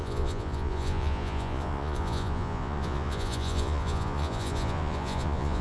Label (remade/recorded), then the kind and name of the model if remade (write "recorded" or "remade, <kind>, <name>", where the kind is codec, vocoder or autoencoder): remade, vocoder, Vocos